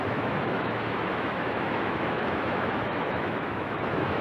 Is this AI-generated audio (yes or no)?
yes